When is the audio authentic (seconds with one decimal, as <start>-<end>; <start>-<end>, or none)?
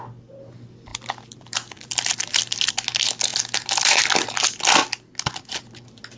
0.0-0.9; 2.7-6.2